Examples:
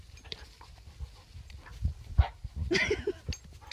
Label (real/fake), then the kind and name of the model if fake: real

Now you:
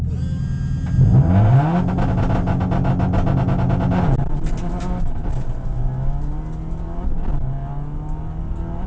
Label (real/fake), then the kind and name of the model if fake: real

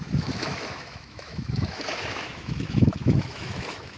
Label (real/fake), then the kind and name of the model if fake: fake, autoencoder, DAC-VAE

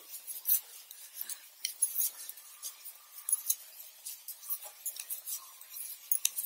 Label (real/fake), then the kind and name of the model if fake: real